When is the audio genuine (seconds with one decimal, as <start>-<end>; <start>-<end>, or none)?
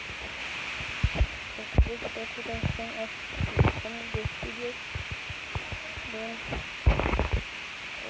0.0-8.1